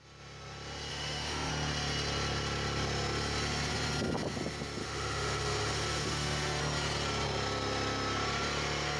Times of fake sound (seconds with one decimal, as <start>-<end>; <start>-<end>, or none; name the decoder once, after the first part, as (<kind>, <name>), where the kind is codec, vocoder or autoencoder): 0.9-1.5 (autoencoder, DAC-VAE); 4.8-6.6